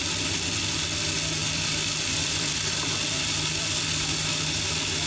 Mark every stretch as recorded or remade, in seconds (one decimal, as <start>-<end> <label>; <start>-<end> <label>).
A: 0.0-1.4 recorded; 1.4-4.3 remade; 4.3-5.1 recorded